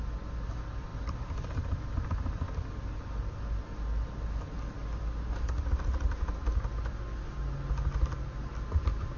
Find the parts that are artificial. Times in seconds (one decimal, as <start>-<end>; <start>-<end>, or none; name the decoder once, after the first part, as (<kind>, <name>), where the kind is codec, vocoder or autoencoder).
none